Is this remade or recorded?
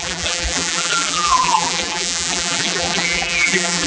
remade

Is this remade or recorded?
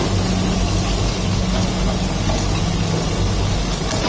recorded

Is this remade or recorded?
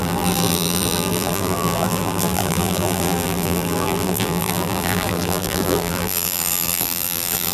remade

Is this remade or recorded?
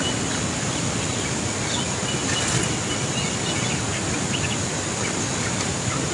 recorded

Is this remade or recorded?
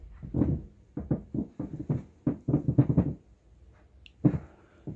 recorded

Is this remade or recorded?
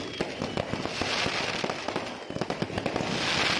recorded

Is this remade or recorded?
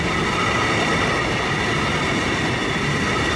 remade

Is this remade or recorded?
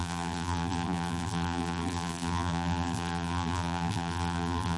remade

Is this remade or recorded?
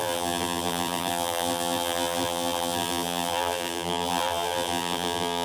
remade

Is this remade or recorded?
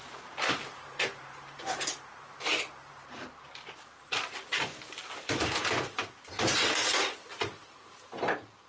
remade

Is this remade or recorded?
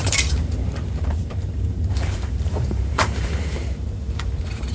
remade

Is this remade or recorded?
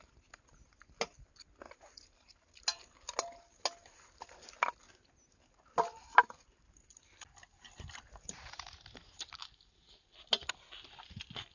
recorded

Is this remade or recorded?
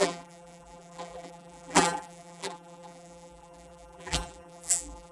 remade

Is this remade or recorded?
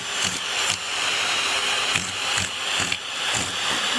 remade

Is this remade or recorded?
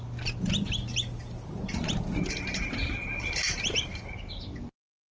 recorded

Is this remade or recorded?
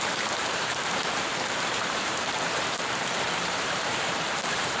remade